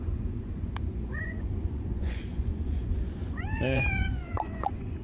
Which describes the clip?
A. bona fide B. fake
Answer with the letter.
B